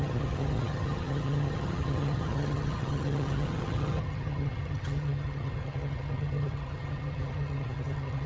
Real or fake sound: fake